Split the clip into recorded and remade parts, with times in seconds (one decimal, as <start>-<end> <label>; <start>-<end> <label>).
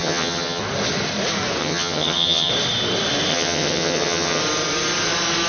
0.0-0.6 remade; 0.6-1.6 recorded; 1.6-2.5 remade; 2.5-3.3 recorded; 3.3-4.4 remade; 4.4-5.5 recorded